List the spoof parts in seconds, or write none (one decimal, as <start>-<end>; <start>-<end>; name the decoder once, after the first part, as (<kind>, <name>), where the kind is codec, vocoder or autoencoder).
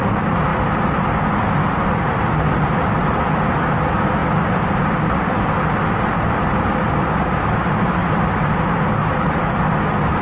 0.0-8.0 (vocoder, BigVGAN v2); 9.1-10.2